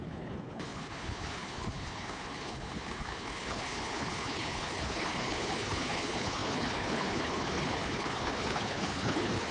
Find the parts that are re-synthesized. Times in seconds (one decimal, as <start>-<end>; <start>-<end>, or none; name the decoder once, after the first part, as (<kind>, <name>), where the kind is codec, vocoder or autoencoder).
0.0-9.5 (codec, HILCodec)